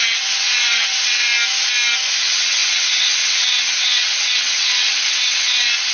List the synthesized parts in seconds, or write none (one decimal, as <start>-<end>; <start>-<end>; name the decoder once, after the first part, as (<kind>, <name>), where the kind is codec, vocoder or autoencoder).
0.0-1.3 (vocoder, WaveNeXt); 2.2-5.9